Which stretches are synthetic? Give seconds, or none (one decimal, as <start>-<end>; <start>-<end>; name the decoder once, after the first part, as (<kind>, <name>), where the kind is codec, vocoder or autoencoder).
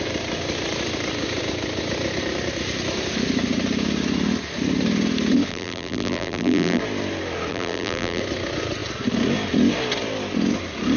5.5-6.8 (vocoder, BigVGAN v2); 7.5-8.2